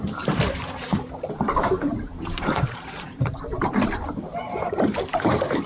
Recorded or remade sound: remade